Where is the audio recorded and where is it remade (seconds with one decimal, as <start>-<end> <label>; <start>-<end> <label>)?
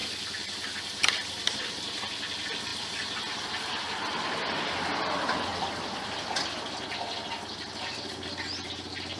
0.0-9.2 recorded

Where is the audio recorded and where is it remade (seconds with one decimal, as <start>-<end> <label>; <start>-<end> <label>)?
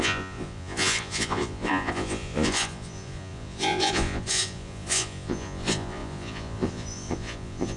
0.0-7.8 remade